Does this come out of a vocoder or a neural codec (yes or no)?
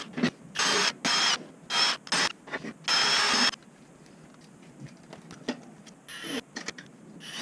no